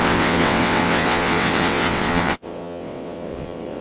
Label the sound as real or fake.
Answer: fake